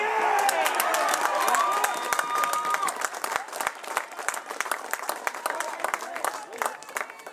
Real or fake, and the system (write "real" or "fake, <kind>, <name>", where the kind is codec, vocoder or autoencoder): real